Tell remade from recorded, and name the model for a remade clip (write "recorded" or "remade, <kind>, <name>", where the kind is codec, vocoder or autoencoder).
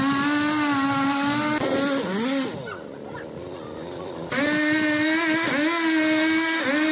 recorded